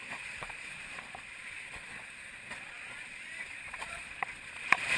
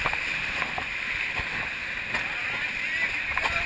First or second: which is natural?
second